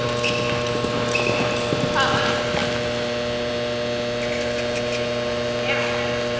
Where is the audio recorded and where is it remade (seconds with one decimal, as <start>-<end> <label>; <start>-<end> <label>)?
0.0-6.4 recorded